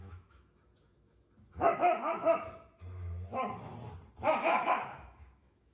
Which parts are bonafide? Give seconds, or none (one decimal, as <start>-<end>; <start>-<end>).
3.7-4.2